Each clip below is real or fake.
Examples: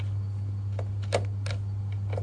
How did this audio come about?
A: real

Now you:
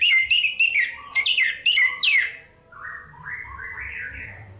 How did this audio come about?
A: fake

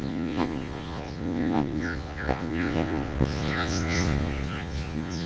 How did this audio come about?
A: fake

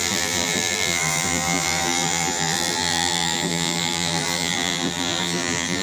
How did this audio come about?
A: fake